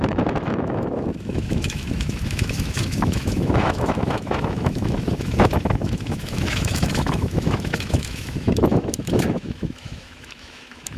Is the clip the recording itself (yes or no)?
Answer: no